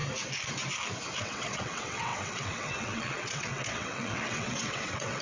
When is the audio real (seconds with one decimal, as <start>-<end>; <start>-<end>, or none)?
0.0-1.2